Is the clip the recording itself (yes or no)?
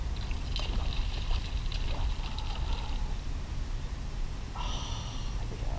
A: yes